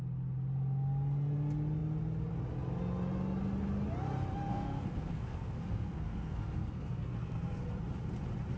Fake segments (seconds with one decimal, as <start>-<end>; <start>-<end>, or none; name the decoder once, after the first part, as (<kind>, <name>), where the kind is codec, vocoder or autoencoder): 4.5-7.6 (codec, SNAC)